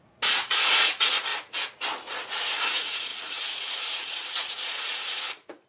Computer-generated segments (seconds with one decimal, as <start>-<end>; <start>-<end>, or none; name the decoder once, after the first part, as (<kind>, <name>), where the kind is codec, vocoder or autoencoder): 0.0-1.3 (vocoder, Vocos); 2.2-5.7